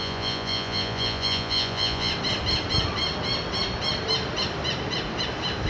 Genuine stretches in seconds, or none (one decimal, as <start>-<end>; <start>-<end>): 2.1-5.7